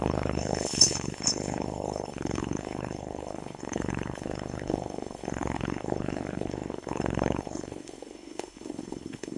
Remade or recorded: remade